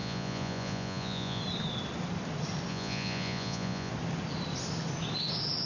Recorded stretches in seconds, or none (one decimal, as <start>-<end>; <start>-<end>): 1.4-2.7; 3.9-5.7